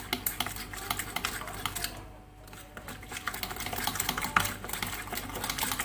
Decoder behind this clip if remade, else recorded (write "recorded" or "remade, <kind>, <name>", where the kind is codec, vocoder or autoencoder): recorded